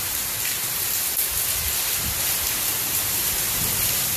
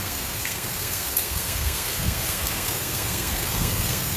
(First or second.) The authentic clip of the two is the first